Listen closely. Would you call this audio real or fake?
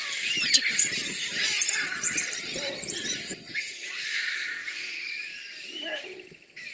fake